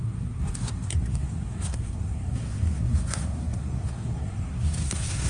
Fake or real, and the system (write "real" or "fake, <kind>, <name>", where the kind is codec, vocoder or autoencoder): fake, codec, SNAC